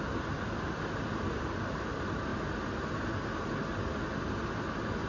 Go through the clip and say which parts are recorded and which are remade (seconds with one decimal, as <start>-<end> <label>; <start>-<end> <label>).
0.0-5.1 recorded